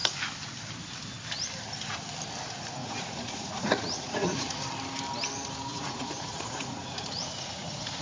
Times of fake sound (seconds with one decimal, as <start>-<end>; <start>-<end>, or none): 2.8-4.6; 5.7-8.0